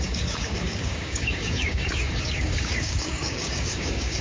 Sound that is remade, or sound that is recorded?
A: remade